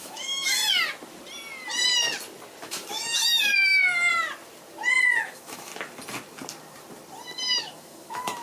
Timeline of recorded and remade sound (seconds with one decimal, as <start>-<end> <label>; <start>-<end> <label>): 0.0-0.6 remade; 0.6-2.6 recorded; 2.6-3.5 remade; 3.5-5.2 recorded; 5.2-5.7 remade; 5.7-7.6 recorded; 7.6-8.4 remade